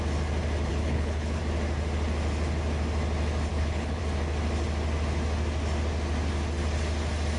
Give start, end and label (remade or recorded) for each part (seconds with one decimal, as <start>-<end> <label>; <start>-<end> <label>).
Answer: 0.0-0.7 recorded; 0.7-1.4 remade; 1.4-3.5 recorded; 3.5-4.0 remade; 4.0-7.4 recorded

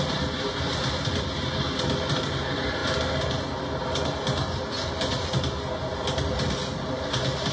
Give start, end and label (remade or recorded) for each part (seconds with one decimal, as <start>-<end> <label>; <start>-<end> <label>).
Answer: 0.0-7.5 recorded

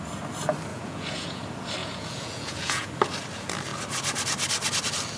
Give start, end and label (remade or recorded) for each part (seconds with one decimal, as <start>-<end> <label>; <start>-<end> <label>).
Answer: 0.0-0.7 recorded; 0.7-1.4 remade; 1.4-1.8 recorded; 1.8-2.9 remade; 2.9-5.2 recorded

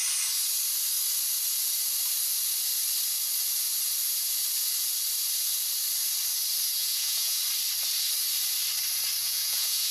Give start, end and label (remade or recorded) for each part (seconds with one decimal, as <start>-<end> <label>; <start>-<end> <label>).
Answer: 0.0-6.8 recorded; 6.8-7.4 remade; 7.4-9.2 recorded; 9.2-9.9 remade

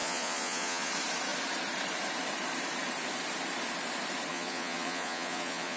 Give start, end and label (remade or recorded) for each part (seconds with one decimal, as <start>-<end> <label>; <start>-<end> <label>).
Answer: 0.0-0.9 remade; 0.9-4.3 recorded; 4.3-5.8 remade

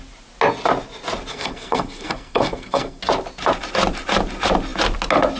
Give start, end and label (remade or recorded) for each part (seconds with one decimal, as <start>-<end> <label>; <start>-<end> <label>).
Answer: 0.0-1.3 recorded; 1.3-3.0 remade; 3.0-5.4 recorded

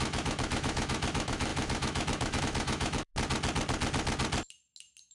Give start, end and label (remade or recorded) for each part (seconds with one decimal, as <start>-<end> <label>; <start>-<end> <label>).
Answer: 0.0-3.1 remade; 3.1-5.1 recorded